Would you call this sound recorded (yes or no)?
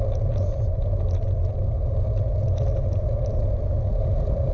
yes